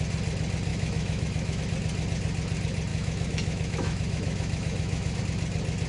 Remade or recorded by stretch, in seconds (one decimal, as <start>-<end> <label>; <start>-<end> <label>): 0.0-0.7 recorded; 0.7-1.6 remade; 1.6-2.9 recorded; 2.9-5.2 remade; 5.2-5.9 recorded

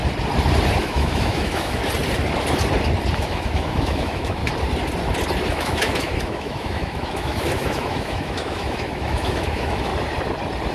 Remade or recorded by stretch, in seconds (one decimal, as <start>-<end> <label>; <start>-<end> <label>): 0.0-0.8 recorded; 0.8-1.8 remade; 1.8-3.2 recorded; 3.2-4.4 remade; 4.4-5.5 recorded; 5.5-9.9 remade; 9.9-10.7 recorded

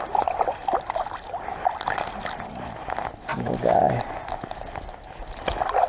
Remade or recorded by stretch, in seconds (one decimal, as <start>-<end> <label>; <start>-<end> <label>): 0.0-3.3 recorded; 3.3-3.9 remade; 3.9-5.9 recorded